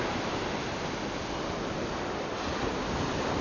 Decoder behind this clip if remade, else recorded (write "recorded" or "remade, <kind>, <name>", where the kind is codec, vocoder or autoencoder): recorded